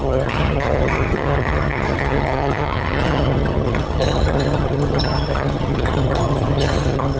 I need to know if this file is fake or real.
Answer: fake